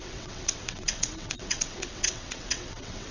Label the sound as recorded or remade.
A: remade